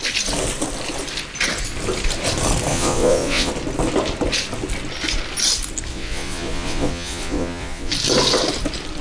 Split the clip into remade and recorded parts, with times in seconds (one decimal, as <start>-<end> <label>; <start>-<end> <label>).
0.0-2.7 recorded; 2.7-3.5 remade; 3.5-5.9 recorded; 5.9-7.9 remade; 7.9-9.0 recorded